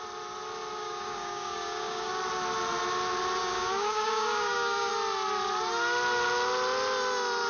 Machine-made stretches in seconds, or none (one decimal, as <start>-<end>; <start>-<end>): 0.8-2.1; 3.4-4.9